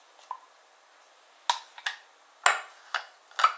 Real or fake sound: real